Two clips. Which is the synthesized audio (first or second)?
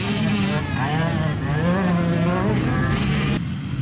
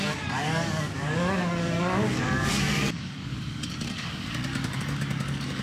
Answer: second